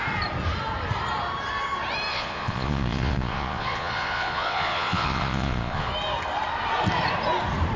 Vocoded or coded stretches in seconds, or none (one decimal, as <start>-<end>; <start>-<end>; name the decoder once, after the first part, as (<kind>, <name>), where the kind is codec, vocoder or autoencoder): 2.1-5.9 (vocoder, Vocos)